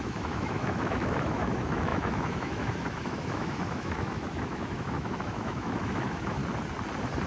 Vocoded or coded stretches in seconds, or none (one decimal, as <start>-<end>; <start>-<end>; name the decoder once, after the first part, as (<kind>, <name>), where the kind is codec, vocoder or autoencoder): 0.0-6.4 (autoencoder, DAC-VAE)

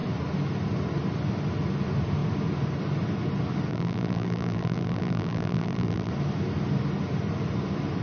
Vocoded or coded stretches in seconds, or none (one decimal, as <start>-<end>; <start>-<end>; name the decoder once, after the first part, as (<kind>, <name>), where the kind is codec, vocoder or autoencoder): 3.7-6.1 (vocoder, BigVGAN v2)

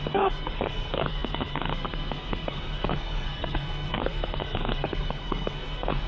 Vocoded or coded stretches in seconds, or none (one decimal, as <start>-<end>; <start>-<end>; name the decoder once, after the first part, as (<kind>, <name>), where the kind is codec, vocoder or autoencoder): 0.0-6.1 (codec, SNAC)

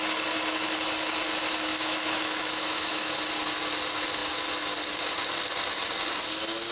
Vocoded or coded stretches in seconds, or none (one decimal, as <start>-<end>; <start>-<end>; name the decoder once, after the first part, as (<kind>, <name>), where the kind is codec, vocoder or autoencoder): 1.7-3.2 (autoencoder, DAC-VAE)